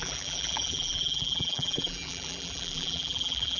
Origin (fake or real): fake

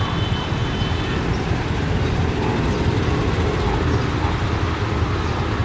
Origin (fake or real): real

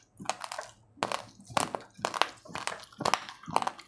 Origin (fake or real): real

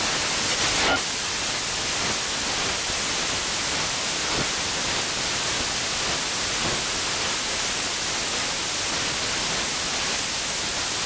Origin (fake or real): real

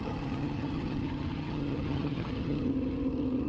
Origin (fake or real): fake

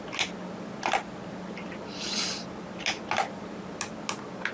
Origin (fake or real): real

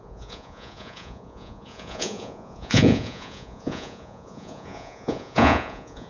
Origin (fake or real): fake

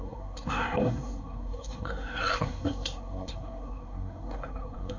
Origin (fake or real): fake